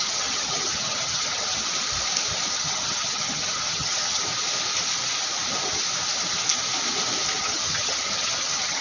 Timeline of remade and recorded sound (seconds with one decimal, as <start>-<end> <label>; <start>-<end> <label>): 0.0-1.6 remade; 1.6-2.5 recorded; 2.5-4.2 remade; 4.2-7.4 recorded; 7.4-8.8 remade